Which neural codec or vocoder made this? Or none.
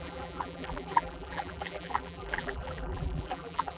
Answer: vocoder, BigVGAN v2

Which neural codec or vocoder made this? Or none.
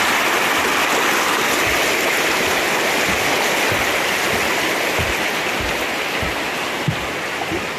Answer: none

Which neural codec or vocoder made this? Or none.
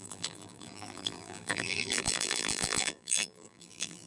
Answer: vocoder, BigVGAN v2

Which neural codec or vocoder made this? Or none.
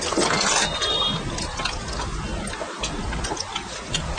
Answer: none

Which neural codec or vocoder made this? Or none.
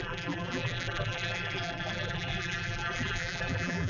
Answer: vocoder, BigVGAN v2